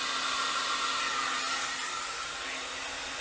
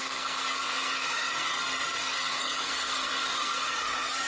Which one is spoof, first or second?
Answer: second